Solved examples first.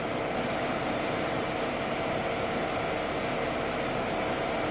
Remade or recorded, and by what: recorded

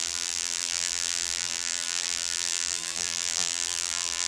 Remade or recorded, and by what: remade, vocoder, BigVGAN v2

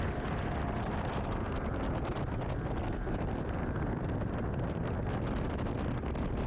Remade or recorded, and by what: recorded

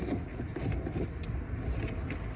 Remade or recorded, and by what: recorded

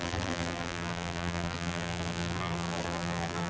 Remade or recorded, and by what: remade, vocoder, BigVGAN v2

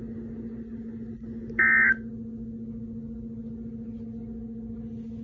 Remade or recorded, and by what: recorded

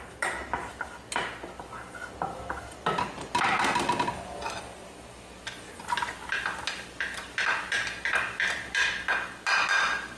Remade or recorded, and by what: recorded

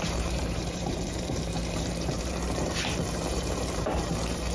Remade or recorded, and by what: remade, vocoder, BigVGAN v2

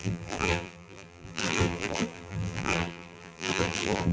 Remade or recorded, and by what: remade, vocoder, BigVGAN v2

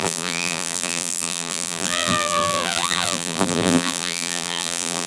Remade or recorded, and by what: remade, vocoder, BigVGAN v2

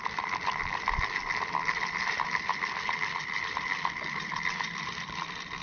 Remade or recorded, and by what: recorded